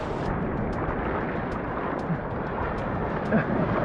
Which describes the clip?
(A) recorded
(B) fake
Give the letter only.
A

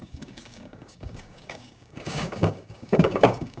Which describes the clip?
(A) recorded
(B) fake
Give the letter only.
B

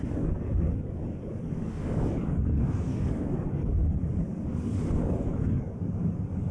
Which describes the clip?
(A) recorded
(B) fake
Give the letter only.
B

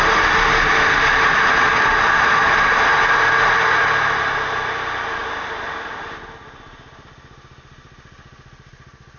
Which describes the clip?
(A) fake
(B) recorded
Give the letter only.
B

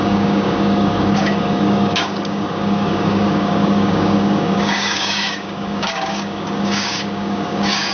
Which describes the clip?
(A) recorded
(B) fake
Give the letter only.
B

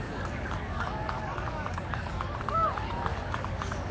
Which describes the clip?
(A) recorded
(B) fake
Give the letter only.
B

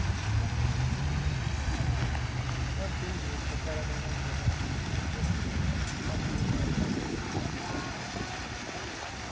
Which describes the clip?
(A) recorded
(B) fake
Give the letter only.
A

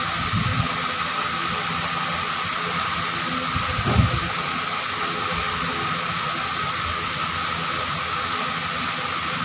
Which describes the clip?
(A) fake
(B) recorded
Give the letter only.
B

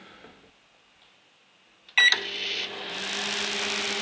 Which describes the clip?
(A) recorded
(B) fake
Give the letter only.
A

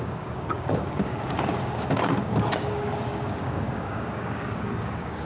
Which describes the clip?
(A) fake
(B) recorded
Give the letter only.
A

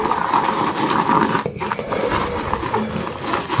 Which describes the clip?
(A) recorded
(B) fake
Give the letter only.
A